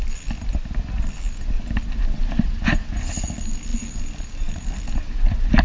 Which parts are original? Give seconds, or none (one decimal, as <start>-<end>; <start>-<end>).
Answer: 0.0-5.6